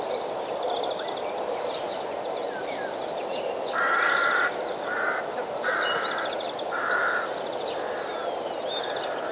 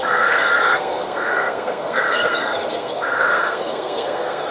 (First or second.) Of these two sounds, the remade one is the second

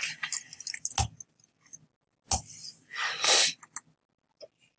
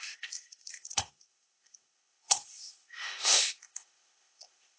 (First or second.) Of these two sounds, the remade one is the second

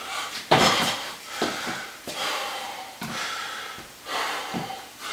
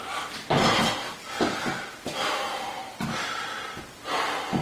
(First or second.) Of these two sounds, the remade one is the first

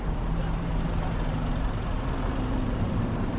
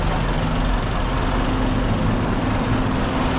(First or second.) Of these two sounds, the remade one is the first